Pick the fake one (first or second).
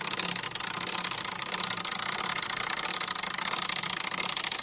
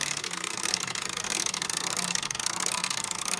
second